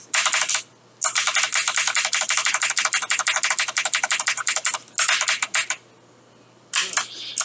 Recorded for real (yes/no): yes